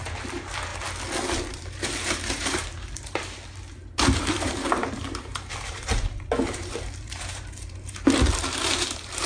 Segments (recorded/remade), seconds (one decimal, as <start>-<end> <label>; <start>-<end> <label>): 0.0-0.7 remade; 0.7-1.5 recorded; 1.5-9.3 remade